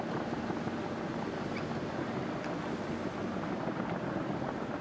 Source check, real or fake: real